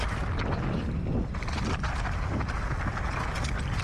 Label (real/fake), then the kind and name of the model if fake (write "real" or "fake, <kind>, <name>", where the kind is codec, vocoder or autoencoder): real